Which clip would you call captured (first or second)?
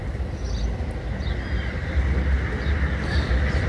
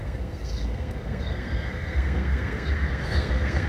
first